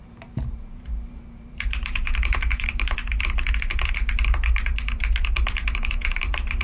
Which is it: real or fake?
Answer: fake